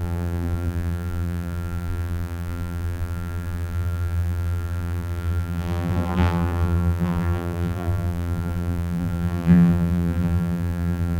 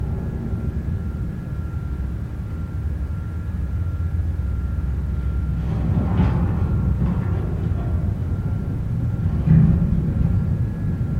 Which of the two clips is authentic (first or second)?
second